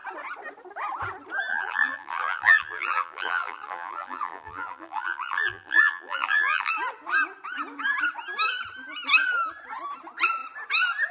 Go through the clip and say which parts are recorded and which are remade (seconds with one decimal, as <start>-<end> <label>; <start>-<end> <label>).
0.0-1.5 recorded; 1.5-6.7 remade; 6.7-11.1 recorded